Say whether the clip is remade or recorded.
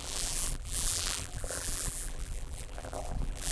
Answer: remade